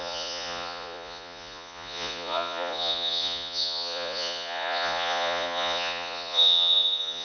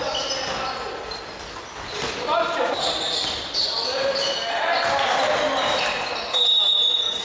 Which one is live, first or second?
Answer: second